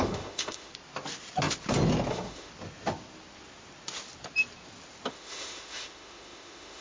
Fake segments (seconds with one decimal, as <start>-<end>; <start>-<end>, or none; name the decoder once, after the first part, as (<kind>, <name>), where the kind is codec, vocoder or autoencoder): 0.0-0.7 (autoencoder, DAC-VAE); 2.1-2.5; 5.1-6.8

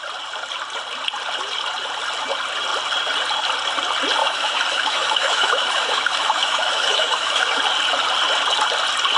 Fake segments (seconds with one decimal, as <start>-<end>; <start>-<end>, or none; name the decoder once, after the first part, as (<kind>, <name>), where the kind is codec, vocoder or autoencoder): 4.2-7.6 (autoencoder, DAC-VAE)

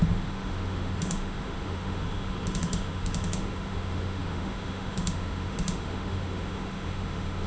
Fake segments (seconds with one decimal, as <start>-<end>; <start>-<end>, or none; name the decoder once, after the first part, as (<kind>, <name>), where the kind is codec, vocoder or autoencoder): 0.0-7.5 (autoencoder, DAC-VAE)

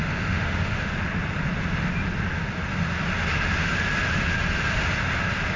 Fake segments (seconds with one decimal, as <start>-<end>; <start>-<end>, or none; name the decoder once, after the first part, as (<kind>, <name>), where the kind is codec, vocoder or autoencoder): 0.0-0.9 (autoencoder, DAC-VAE)

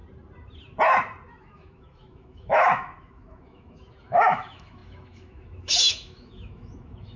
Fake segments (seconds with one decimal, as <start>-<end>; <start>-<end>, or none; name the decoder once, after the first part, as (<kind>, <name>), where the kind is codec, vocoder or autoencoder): 1.3-7.2 (autoencoder, DAC-VAE)